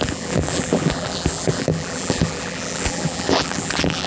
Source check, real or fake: fake